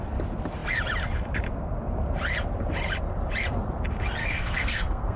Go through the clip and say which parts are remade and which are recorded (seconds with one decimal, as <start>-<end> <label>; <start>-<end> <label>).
0.0-4.2 recorded; 4.2-5.2 remade